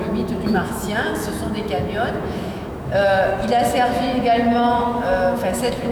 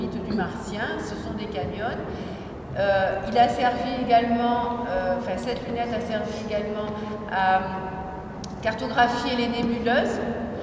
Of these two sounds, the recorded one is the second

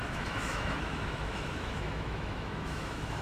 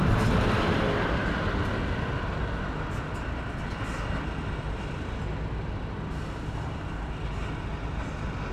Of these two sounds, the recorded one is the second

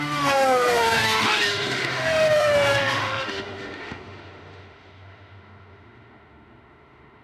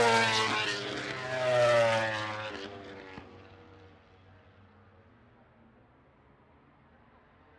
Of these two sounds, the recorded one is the second